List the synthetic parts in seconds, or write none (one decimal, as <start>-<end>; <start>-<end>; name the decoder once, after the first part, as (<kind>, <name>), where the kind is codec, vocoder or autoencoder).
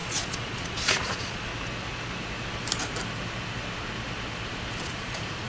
0.0-1.5 (vocoder, Vocos); 4.8-5.5